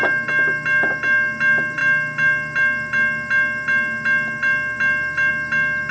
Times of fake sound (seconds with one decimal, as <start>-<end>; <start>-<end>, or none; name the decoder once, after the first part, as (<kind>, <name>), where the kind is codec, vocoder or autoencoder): none